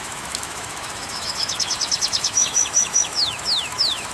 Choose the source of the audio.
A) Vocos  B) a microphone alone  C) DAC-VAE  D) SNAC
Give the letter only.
C